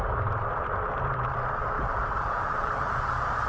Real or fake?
fake